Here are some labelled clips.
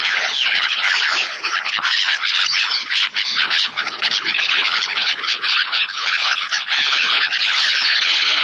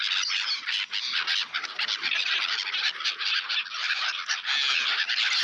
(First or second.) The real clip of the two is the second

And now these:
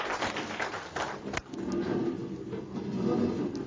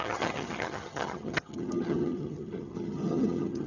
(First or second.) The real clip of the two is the first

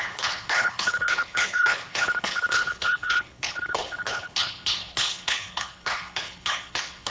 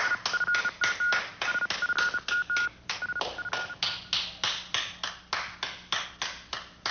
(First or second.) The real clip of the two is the second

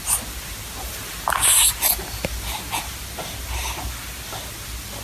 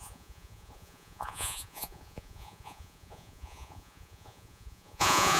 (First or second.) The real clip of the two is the first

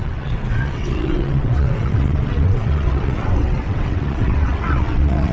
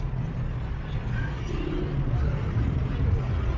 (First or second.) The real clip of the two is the second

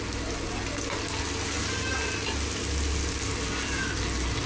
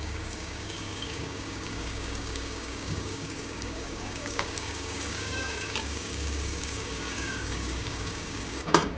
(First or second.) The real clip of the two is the first